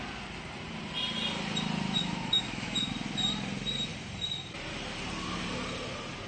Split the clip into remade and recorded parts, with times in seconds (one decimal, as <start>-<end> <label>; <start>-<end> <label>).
0.0-2.0 recorded; 2.0-2.9 remade; 2.9-6.3 recorded